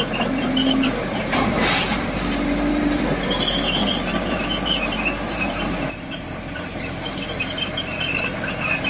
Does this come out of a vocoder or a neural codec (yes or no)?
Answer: yes